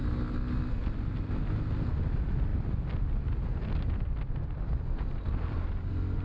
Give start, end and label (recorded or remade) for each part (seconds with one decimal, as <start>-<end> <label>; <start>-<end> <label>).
0.0-6.2 recorded